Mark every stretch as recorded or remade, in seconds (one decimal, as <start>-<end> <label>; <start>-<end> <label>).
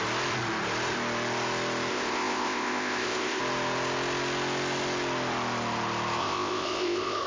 0.0-1.9 recorded; 1.9-3.4 remade; 3.4-6.2 recorded; 6.2-7.3 remade